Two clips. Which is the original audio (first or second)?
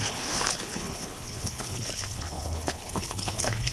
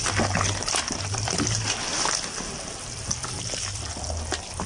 second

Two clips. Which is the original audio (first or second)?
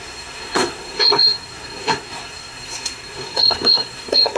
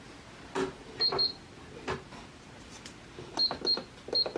second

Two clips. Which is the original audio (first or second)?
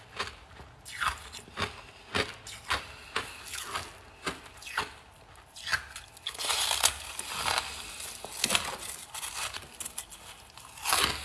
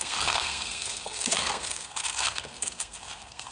first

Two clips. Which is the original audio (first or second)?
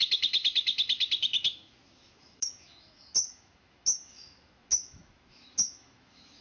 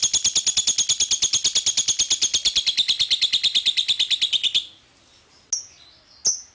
second